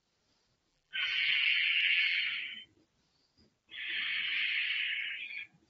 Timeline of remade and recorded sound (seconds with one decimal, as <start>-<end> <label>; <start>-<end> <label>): 0.0-0.7 recorded; 0.7-2.2 remade; 2.2-5.7 recorded